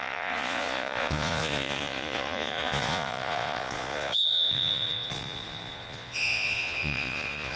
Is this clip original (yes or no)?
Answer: no